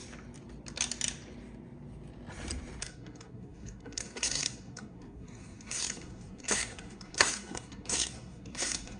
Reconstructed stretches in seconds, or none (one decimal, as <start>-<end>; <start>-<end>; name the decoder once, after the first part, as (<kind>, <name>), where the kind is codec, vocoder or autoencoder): 2.8-9.0 (codec, SNAC)

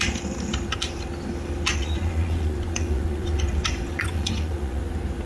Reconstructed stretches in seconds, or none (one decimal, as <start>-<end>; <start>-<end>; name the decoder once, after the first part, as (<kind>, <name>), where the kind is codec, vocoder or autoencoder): 1.7-4.8 (vocoder, Vocos)

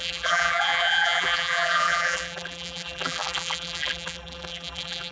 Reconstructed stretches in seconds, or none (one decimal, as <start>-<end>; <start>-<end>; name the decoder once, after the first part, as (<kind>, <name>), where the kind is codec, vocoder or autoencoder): 0.0-5.1 (vocoder, BigVGAN v2)

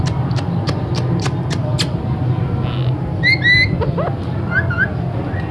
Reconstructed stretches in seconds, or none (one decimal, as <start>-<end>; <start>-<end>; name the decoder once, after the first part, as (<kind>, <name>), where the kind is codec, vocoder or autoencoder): none

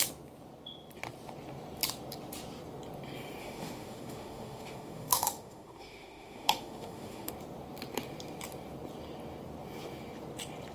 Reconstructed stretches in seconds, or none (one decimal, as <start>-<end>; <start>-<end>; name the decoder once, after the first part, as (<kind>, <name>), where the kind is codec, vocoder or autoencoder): 3.4-7.3 (autoencoder, DAC-VAE)

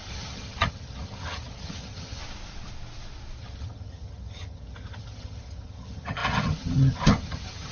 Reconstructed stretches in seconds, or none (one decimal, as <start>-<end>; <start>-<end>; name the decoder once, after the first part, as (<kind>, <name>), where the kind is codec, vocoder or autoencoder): 0.0-2.2 (vocoder, HiFi-GAN); 3.4-7.7

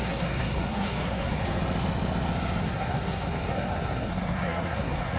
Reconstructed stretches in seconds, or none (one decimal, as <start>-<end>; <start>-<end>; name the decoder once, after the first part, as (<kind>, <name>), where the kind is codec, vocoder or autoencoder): 0.0-1.4 (codec, SNAC); 2.6-5.2

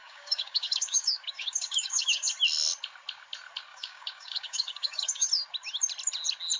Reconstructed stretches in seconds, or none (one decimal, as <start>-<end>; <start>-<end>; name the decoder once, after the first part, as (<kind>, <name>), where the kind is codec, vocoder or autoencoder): 0.0-2.3 (codec, DAC); 3.7-5.3